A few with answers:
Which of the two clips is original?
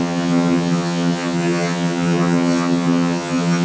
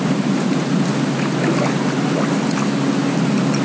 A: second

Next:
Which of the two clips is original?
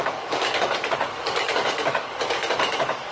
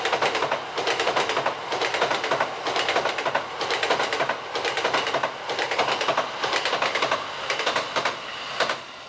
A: second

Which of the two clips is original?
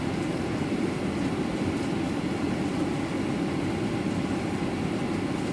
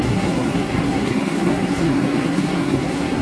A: first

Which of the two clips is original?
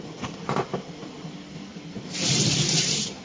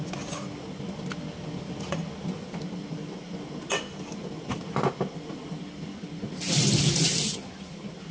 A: second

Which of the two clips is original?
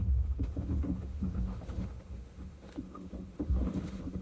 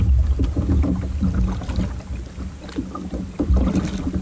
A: second